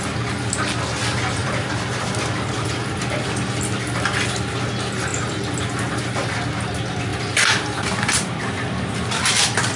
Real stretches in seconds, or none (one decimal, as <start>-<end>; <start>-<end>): 0.0-1.4; 3.6-7.1; 8.9-9.8

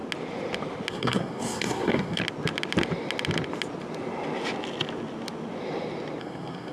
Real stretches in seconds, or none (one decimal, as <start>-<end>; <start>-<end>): 0.0-0.9; 2.2-6.2